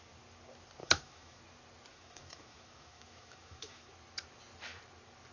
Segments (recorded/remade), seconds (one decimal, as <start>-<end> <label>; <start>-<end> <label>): 0.0-0.8 recorded; 0.8-1.4 remade; 1.4-1.9 recorded; 1.9-3.9 remade; 3.9-5.3 recorded

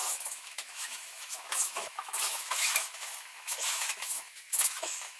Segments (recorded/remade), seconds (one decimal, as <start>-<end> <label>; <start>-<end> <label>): 0.0-5.2 remade

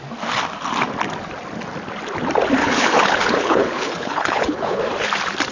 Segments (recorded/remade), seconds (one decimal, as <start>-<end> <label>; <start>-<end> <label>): 0.0-2.6 recorded; 2.6-4.8 remade; 4.8-5.5 recorded

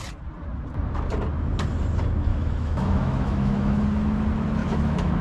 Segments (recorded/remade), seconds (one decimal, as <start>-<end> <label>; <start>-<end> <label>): 0.0-2.3 recorded; 2.3-3.8 remade; 3.8-4.6 recorded; 4.6-5.2 remade